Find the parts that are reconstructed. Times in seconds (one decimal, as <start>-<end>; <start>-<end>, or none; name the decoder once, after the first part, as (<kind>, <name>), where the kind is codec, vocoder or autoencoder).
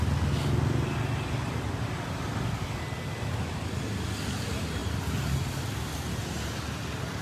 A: none